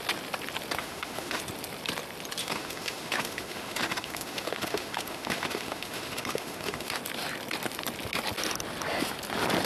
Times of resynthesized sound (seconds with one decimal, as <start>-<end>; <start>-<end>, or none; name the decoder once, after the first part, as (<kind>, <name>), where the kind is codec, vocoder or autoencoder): 0.8-1.4 (autoencoder, DAC-VAE); 2.4-7.0

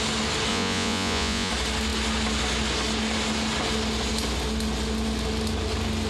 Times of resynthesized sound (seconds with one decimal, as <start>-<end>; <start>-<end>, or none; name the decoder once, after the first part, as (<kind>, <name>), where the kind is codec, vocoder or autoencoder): 0.5-1.5 (vocoder, Vocos)

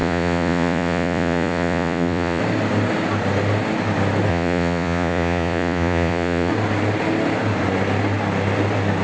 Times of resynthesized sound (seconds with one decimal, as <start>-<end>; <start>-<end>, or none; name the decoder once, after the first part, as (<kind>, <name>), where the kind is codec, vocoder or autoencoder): 0.0-2.4 (vocoder, Vocos); 4.3-6.5

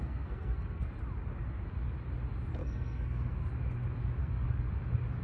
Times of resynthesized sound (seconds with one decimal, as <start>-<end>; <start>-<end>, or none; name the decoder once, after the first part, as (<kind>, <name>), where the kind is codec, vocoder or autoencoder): 0.0-0.9 (codec, SNAC); 2.6-3.5; 4.2-4.7

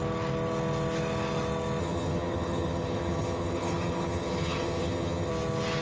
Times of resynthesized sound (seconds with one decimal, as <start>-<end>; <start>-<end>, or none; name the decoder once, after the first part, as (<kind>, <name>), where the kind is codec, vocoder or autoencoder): 1.8-5.3 (vocoder, HiFi-GAN)

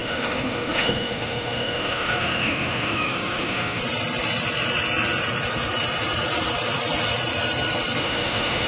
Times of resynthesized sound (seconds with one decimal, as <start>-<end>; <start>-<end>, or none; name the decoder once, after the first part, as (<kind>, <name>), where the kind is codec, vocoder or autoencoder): 0.0-3.8 (autoencoder, DAC-VAE); 8.0-8.7

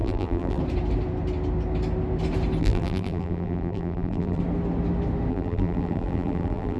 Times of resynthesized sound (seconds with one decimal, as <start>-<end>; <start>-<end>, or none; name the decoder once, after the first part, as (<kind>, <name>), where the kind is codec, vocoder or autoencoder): 0.0-0.6 (vocoder, BigVGAN v2); 2.6-4.4; 5.3-6.8